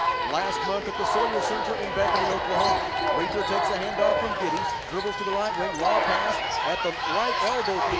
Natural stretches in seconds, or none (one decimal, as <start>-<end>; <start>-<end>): 2.3-4.1; 5.5-6.2